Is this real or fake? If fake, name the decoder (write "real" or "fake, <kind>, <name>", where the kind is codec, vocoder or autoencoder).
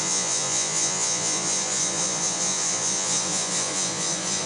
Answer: fake, vocoder, Vocos